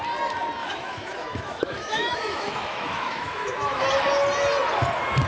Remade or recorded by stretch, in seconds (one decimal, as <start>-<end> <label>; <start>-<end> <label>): 0.0-0.6 recorded; 0.6-3.8 remade; 3.8-5.3 recorded